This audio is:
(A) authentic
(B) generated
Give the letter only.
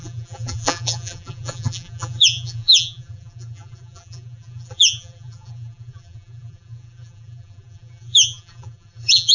B